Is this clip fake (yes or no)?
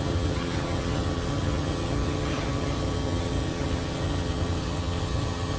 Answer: yes